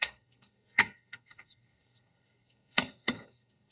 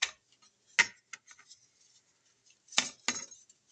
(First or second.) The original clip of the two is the second